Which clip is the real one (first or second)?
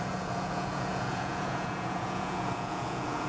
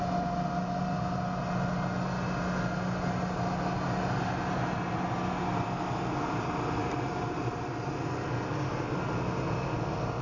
second